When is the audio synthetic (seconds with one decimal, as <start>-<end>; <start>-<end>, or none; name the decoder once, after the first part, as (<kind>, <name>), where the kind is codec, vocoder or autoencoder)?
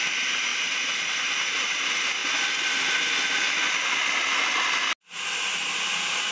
0.0-2.2 (vocoder, BigVGAN v2)